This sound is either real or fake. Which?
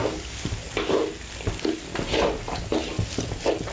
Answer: real